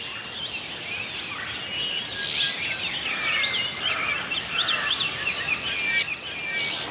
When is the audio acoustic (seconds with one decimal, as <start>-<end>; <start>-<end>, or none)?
0.0-6.9